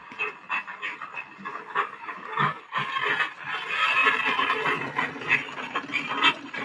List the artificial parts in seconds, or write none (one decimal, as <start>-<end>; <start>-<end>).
1.5-2.9